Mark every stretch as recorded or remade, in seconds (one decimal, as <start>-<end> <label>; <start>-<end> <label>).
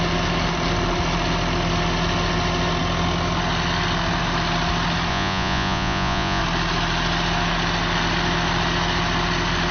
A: 0.0-5.1 recorded; 5.1-6.4 remade; 6.4-9.7 recorded